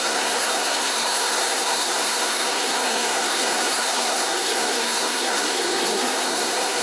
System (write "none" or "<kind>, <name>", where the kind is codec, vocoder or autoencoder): codec, SNAC